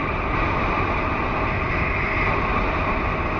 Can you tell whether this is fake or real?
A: real